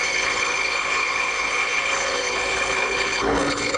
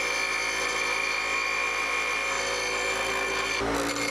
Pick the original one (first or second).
second